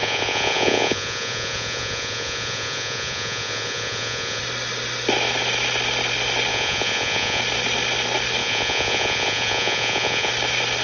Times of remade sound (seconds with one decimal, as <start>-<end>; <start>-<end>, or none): 0.0-4.4; 6.5-7.4; 8.4-10.3